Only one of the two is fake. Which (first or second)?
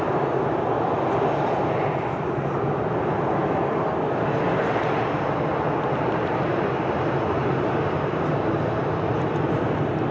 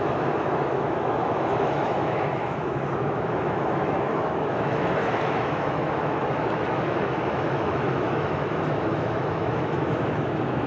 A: second